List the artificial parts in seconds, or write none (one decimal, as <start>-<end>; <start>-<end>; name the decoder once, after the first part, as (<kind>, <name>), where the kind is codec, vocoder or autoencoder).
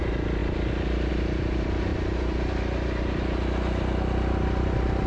none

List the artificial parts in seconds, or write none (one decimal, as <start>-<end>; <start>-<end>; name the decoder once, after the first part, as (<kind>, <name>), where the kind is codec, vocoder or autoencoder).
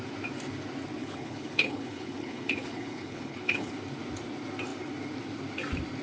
1.0-3.7 (codec, HILCodec)